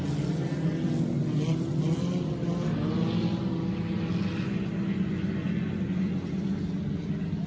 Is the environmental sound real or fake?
real